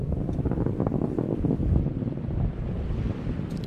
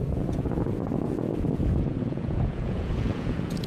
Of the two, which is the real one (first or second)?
first